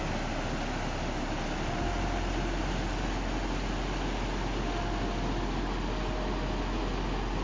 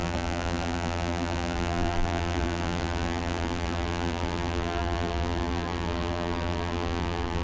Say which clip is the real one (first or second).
first